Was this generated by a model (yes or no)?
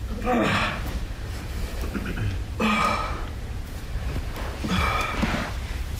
yes